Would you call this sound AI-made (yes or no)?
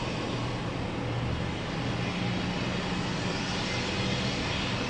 no